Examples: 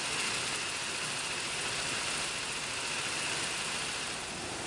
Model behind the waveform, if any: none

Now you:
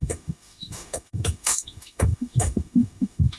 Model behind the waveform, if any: autoencoder, DAC-VAE